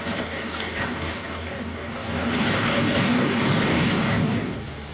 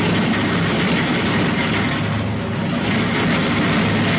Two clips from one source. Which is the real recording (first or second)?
second